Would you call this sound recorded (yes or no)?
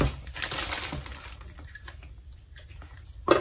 yes